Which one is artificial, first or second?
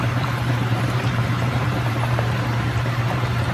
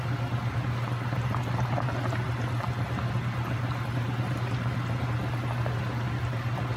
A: first